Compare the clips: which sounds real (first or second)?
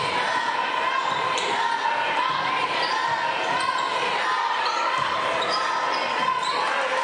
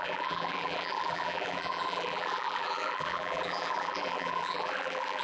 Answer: first